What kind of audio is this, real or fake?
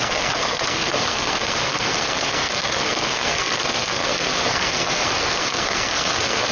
fake